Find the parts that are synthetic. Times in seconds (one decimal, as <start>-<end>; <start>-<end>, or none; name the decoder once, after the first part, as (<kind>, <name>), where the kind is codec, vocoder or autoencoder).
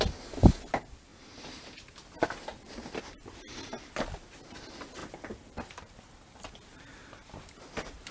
2.5-3.8 (vocoder, BigVGAN v2); 5.0-6.5; 6.9-7.5